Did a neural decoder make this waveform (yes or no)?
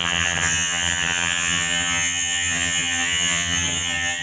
yes